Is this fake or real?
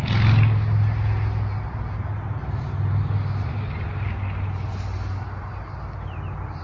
real